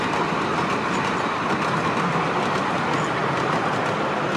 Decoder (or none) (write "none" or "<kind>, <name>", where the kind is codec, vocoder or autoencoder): none